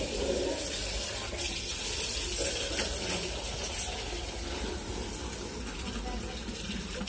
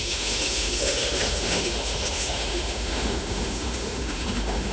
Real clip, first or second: first